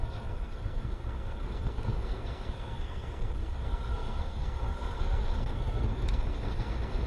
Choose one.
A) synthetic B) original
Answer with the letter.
A